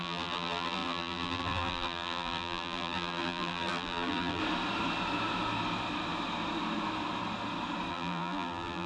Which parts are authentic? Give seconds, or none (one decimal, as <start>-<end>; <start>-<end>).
4.4-7.9